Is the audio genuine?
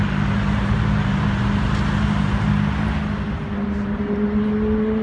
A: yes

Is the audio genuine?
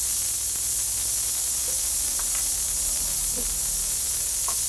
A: yes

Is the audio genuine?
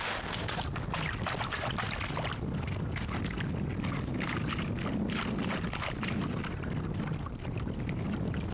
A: yes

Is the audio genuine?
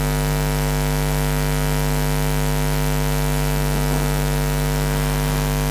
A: yes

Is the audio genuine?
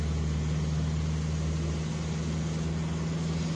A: yes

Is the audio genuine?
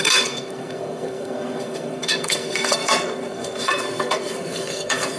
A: no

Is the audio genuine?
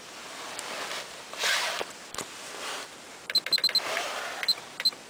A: yes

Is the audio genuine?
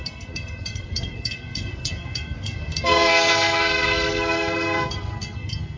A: no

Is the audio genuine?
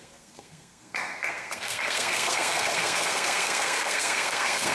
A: no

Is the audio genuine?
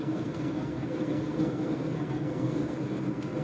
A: no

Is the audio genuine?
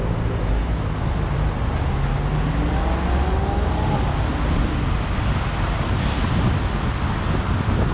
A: yes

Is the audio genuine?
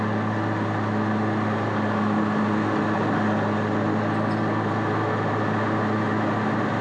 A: yes